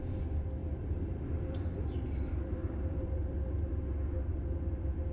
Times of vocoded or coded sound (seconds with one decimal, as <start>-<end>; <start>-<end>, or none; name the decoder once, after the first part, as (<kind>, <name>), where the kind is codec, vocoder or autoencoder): 0.6-3.7 (vocoder, BigVGAN v2)